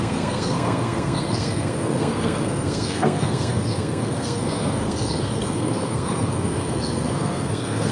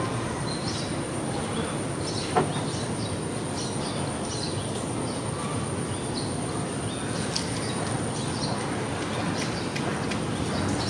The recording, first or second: second